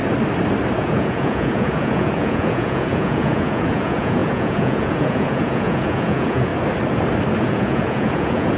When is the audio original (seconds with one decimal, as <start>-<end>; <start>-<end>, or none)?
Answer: 0.0-0.8; 6.5-7.4